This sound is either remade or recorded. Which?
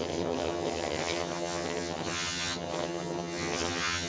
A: remade